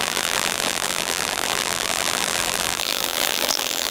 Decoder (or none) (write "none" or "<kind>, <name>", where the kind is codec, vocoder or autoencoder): vocoder, BigVGAN v2